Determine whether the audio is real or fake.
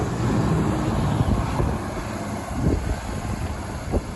real